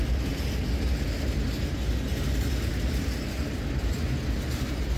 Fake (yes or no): no